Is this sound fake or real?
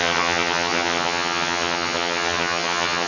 fake